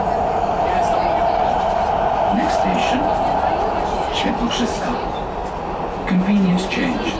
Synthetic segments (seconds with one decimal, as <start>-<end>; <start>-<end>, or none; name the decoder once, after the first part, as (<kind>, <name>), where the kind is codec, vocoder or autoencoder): none